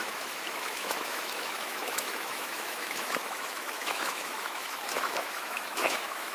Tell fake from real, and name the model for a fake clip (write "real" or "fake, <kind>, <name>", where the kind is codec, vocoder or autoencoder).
fake, autoencoder, DAC-VAE